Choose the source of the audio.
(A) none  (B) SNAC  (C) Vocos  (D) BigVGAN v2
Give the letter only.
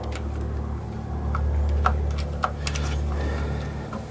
A